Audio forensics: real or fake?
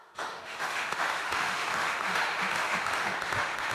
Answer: fake